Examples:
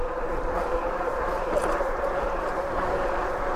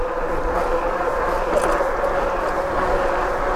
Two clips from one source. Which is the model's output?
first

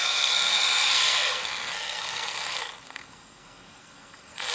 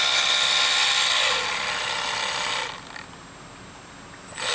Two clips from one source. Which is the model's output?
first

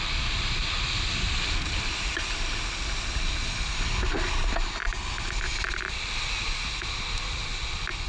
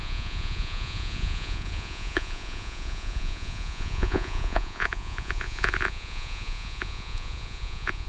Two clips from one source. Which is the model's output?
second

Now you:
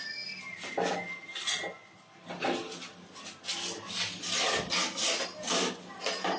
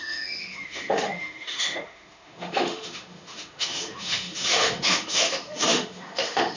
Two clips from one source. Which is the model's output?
second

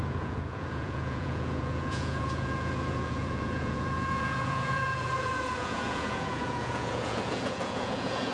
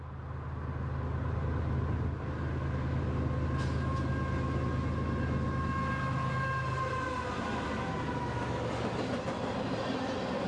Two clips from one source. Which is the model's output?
first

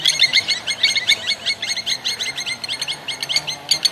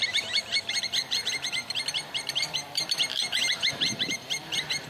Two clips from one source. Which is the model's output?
second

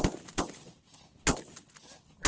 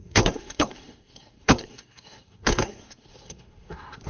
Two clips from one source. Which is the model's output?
second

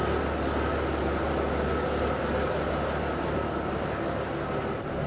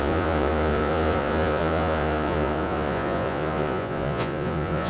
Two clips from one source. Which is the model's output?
second